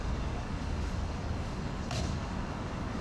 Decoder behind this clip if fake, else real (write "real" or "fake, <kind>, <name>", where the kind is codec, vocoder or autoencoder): fake, codec, DAC